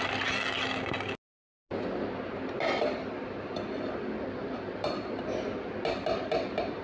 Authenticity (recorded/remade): recorded